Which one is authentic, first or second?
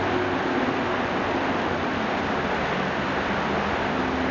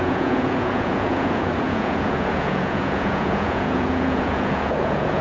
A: first